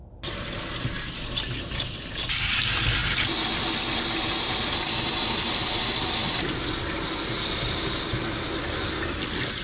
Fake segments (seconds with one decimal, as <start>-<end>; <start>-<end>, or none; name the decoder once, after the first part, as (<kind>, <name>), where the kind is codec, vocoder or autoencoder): none